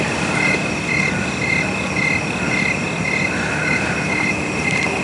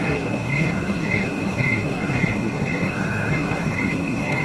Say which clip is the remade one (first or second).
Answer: second